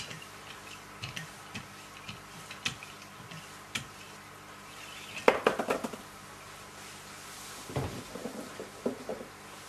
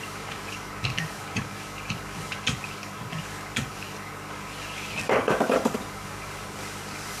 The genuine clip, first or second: first